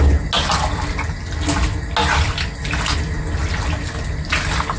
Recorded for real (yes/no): yes